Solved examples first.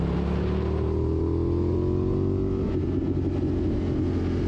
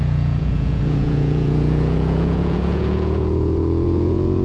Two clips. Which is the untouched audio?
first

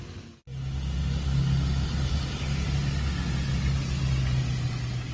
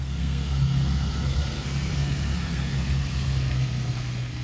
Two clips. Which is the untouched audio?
first